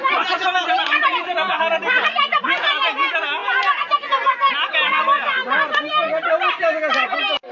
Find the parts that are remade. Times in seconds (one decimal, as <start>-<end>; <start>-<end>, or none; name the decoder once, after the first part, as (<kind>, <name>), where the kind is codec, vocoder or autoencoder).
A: none